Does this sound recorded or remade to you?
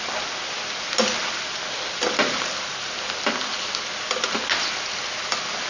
recorded